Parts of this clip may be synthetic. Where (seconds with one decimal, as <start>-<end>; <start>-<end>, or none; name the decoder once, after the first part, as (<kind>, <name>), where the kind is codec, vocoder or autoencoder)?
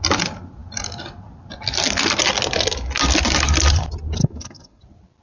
4.2-4.8 (codec, SNAC)